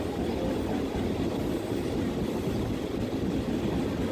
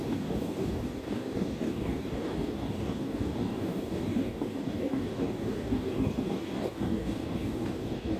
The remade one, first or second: second